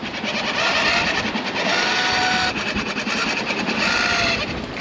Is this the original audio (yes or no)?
yes